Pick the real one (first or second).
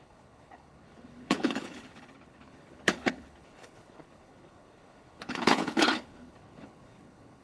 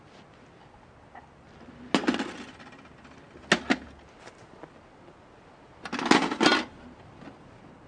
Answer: second